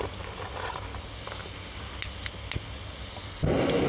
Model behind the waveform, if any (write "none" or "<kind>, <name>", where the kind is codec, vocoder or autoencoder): none